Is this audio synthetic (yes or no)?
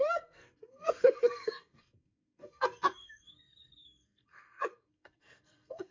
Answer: yes